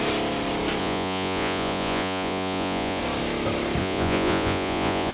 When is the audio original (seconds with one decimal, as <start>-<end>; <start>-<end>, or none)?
0.0-0.8; 3.0-3.8